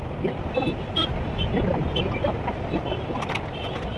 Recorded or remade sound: remade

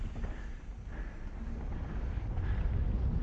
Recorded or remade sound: recorded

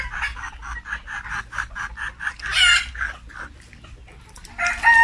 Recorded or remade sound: recorded